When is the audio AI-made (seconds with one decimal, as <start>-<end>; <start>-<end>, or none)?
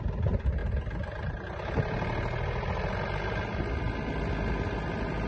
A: none